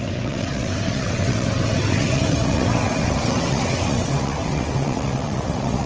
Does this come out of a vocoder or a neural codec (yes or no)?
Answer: yes